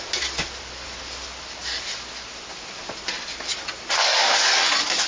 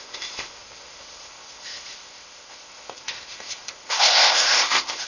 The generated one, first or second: second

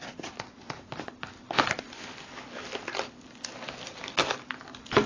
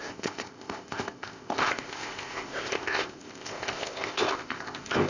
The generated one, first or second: second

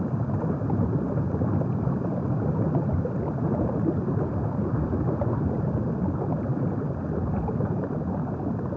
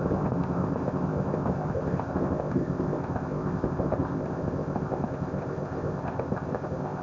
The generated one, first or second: second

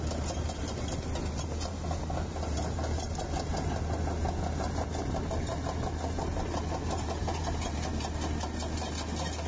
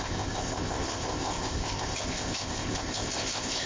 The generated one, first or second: second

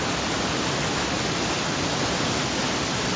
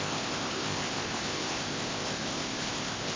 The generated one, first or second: second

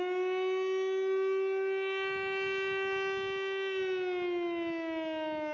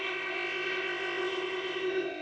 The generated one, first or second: second